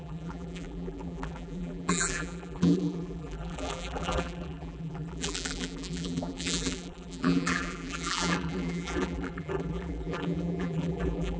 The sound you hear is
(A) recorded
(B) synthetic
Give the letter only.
B